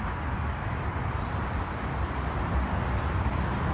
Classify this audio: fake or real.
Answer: real